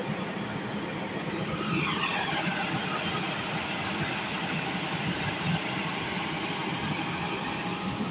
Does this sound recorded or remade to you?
recorded